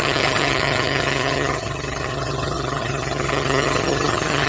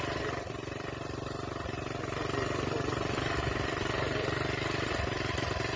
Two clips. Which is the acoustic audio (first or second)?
second